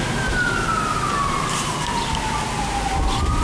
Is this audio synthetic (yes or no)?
no